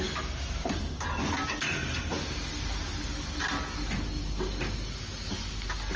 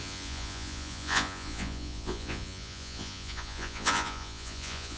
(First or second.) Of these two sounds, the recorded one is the first